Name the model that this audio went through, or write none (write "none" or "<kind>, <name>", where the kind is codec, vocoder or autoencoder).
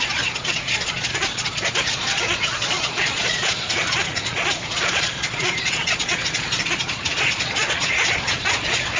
vocoder, Vocos